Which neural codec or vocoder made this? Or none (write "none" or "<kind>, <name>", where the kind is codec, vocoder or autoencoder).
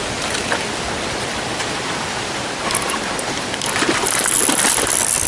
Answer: none